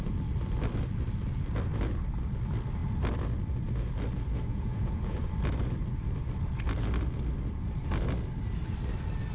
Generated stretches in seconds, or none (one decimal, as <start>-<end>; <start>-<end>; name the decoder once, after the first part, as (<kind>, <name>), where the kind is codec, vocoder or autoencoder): 4.5-5.3 (vocoder, Vocos)